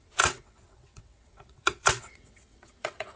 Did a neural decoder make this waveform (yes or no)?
yes